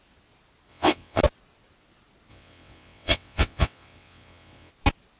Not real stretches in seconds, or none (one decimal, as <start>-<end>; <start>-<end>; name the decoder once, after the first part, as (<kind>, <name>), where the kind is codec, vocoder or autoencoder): 0.7-1.2 (vocoder, WaveNeXt); 2.3-4.7